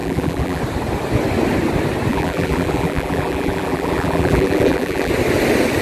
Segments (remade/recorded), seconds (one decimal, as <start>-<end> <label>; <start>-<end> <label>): 0.0-0.6 remade; 0.6-2.1 recorded; 2.1-5.1 remade; 5.1-5.8 recorded

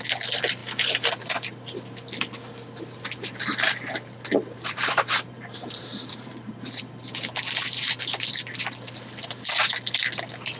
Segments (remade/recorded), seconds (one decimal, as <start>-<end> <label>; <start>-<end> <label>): 0.0-4.4 recorded; 4.4-6.8 remade; 6.8-10.6 recorded

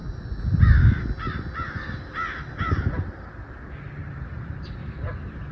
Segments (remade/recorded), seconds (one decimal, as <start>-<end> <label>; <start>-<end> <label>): 0.0-4.0 recorded; 4.0-5.1 remade; 5.1-5.5 recorded

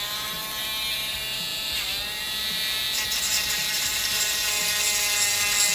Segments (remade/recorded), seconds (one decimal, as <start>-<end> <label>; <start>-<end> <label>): 0.0-1.5 recorded; 1.5-4.6 remade; 4.6-5.7 recorded

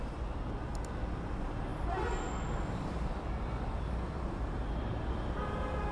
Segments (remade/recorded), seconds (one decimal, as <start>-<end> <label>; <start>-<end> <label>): 0.0-5.9 recorded

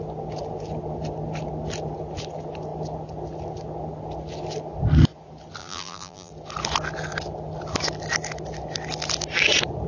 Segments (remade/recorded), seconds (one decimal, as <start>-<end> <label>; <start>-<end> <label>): 0.0-5.6 recorded; 5.6-6.3 remade; 6.3-9.9 recorded

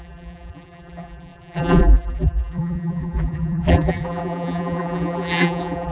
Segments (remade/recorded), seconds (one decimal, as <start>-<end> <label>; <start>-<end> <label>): 0.0-5.9 remade